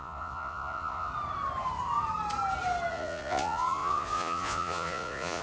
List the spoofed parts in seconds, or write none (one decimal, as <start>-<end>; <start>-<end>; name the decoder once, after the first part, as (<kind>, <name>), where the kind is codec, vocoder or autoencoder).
0.0-1.1 (vocoder, Vocos); 2.9-5.4